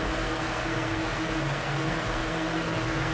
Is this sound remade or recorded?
remade